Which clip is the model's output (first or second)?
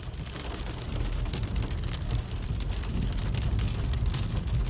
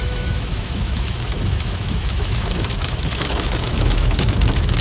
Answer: second